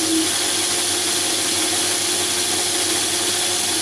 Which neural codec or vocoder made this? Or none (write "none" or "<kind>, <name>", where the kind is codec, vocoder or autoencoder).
none